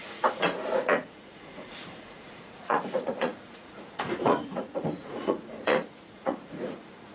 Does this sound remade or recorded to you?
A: remade